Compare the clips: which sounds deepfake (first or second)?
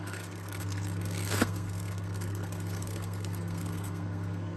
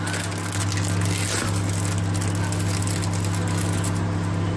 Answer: first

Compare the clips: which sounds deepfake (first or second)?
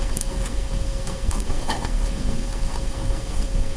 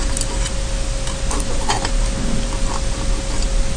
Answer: first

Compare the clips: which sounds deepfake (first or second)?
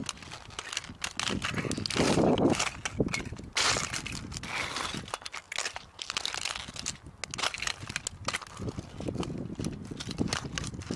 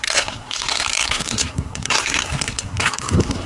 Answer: second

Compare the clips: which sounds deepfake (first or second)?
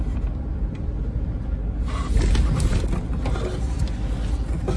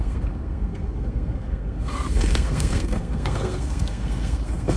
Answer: second